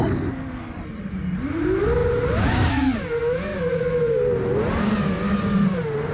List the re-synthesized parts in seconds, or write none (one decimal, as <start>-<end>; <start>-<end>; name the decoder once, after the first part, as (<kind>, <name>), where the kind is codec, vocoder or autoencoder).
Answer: none